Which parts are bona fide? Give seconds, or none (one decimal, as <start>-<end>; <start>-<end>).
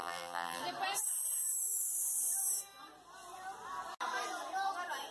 0.6-5.1